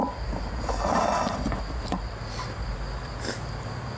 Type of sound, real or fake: real